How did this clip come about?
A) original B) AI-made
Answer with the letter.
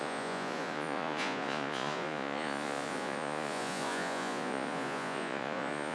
B